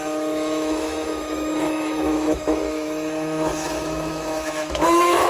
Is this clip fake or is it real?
fake